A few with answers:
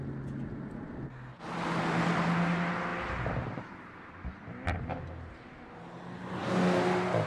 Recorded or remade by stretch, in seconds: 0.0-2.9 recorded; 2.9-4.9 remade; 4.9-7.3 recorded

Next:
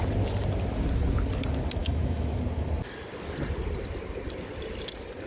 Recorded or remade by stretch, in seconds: 0.0-1.8 recorded; 1.8-2.4 remade; 2.4-5.3 recorded

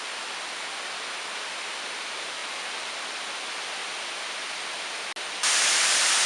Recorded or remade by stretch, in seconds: 0.0-6.3 recorded

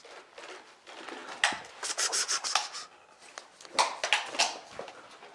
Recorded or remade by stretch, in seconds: 0.0-5.3 recorded

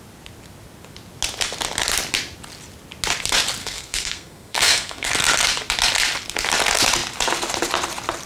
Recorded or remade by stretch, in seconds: 0.0-3.6 recorded; 3.6-5.1 remade; 5.1-8.3 recorded

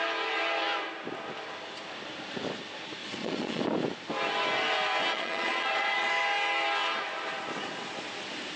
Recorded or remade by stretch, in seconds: 0.0-3.0 recorded; 3.0-3.6 remade; 3.6-5.1 recorded; 5.1-6.1 remade; 6.1-8.6 recorded

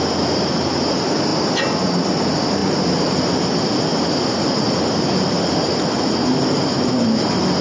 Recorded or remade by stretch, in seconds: 0.0-7.6 recorded